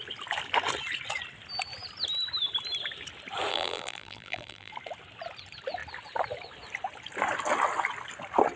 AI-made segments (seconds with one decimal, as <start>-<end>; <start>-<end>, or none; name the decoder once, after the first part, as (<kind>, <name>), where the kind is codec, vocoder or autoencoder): 3.5-4.7 (vocoder, BigVGAN v2)